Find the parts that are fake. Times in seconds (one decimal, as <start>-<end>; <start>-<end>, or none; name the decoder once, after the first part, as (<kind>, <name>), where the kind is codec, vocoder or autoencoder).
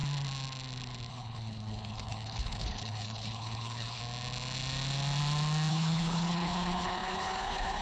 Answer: 1.1-4.0 (codec, HILCodec); 5.7-7.8